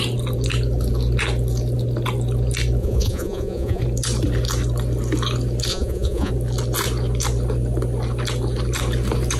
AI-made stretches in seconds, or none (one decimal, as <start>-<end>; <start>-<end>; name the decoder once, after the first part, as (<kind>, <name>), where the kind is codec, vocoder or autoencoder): 2.8-3.8 (vocoder, Vocos); 5.7-6.3